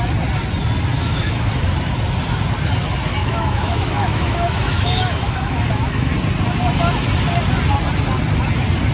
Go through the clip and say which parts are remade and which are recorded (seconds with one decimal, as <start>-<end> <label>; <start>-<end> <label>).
0.0-0.9 recorded; 0.9-1.5 remade; 1.5-3.2 recorded; 3.2-6.1 remade; 6.1-8.9 recorded